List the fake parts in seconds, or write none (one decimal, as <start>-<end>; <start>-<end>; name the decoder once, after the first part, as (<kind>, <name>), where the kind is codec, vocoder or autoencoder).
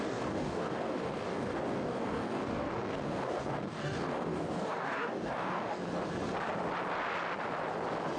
0.0-5.8 (codec, DAC)